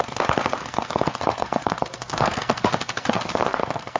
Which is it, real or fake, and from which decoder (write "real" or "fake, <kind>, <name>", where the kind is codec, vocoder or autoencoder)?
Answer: fake, codec, SNAC